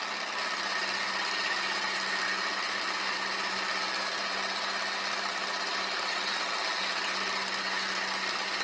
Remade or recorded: recorded